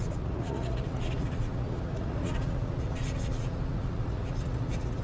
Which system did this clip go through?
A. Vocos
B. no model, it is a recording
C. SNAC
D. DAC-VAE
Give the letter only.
A